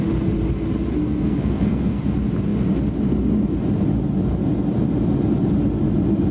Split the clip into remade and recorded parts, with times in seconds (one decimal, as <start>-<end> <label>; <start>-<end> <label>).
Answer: 0.0-1.0 recorded; 1.0-2.0 remade; 2.0-6.3 recorded